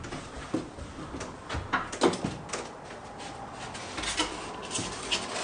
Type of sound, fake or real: real